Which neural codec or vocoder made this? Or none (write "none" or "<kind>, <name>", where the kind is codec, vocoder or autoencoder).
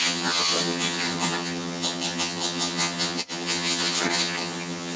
vocoder, HiFi-GAN